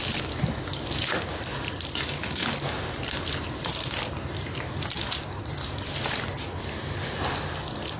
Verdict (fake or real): real